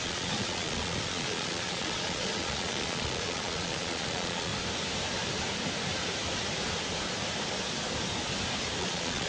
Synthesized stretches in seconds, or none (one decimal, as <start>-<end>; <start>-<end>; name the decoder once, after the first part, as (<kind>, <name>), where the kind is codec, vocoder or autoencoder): 0.0-4.5 (vocoder, Vocos); 8.8-9.3